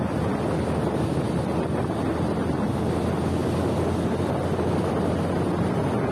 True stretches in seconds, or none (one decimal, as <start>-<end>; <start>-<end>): 0.0-6.1